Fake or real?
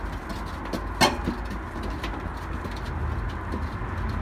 real